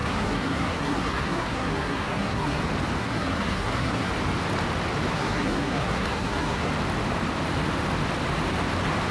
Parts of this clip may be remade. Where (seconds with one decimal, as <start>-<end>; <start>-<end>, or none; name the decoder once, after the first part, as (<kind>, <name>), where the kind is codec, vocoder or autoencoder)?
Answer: 0.0-2.6 (codec, SNAC); 3.0-4.1; 5.1-6.7